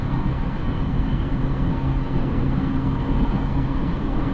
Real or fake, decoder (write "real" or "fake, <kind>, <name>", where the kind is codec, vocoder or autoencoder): fake, codec, SNAC